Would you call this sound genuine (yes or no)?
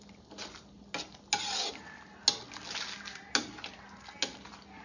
yes